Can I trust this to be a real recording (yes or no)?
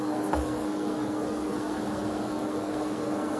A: no